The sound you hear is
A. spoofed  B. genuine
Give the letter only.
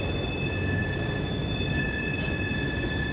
B